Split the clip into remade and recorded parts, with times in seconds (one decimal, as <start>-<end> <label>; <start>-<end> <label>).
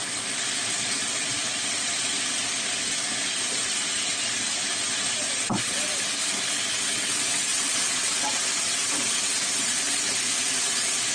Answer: 0.0-7.5 recorded; 7.5-9.0 remade; 9.0-11.1 recorded